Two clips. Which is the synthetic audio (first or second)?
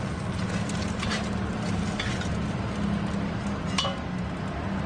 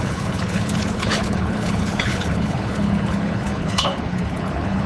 second